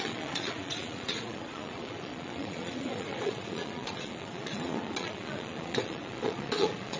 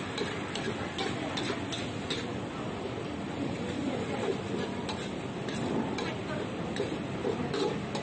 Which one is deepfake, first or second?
first